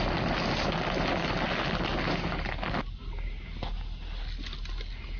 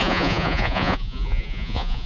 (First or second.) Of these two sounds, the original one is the first